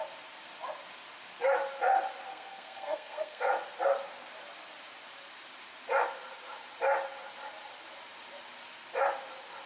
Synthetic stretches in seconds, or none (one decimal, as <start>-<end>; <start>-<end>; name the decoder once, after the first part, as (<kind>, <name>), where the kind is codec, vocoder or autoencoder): 2.3-3.5 (codec, SNAC)